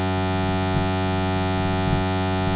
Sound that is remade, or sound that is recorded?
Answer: remade